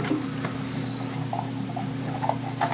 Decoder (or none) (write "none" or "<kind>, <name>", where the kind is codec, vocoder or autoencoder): none